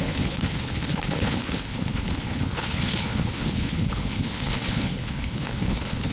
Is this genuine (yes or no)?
no